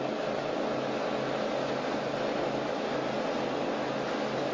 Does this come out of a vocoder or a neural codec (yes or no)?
no